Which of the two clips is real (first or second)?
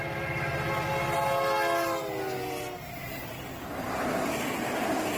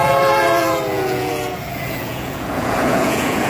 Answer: first